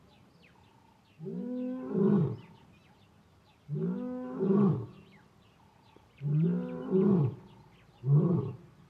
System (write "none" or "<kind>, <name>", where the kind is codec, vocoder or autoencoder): none